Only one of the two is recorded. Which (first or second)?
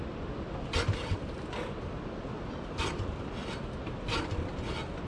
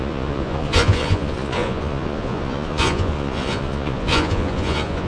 first